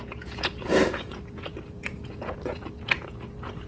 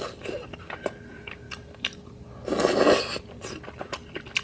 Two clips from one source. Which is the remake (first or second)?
first